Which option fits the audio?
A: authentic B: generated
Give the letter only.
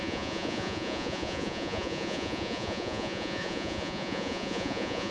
B